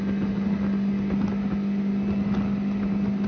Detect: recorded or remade recorded